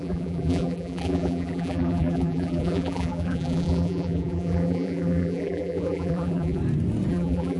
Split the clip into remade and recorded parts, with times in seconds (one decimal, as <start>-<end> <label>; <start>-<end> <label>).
0.0-6.6 remade; 6.6-7.1 recorded; 7.1-7.6 remade